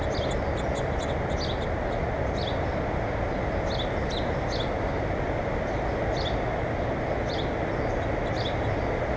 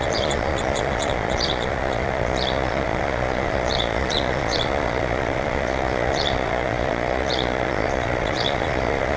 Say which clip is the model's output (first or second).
second